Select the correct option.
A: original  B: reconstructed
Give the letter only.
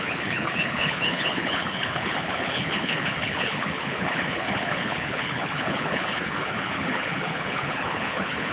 B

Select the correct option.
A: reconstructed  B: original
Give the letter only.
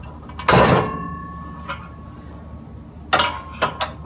B